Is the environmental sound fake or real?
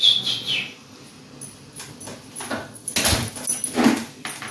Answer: real